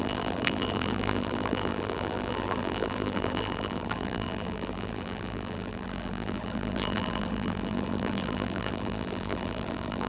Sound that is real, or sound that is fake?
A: fake